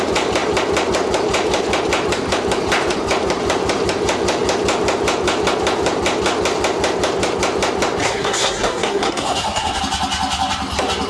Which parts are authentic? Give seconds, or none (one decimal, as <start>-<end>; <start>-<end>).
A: 0.0-8.0; 9.8-11.1